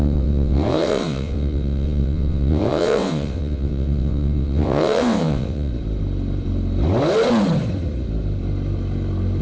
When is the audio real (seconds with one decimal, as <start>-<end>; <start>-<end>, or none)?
5.7-9.4